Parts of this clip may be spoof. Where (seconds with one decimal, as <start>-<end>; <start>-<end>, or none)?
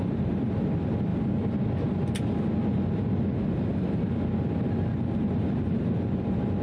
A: 0.0-1.1; 4.8-6.6